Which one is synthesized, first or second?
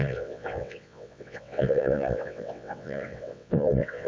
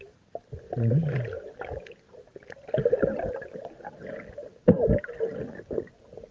first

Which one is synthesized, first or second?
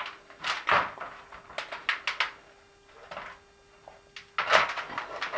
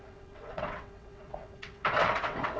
second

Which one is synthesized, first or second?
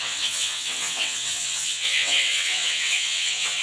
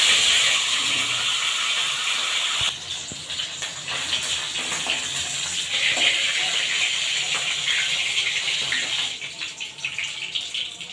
first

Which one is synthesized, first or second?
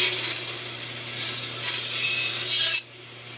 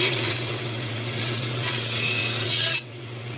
second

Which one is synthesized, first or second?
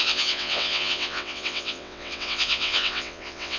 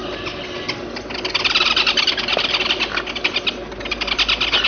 first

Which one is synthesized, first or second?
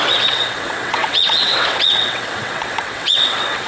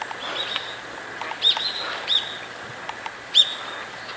first